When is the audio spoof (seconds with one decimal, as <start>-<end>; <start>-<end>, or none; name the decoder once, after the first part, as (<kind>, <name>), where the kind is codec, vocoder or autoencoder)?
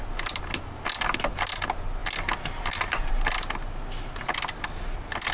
none